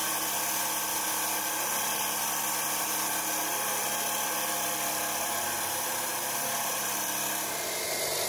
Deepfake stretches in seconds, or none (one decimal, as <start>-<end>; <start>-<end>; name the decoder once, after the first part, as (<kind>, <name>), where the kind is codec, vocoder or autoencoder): 1.7-8.3 (vocoder, BigVGAN v2)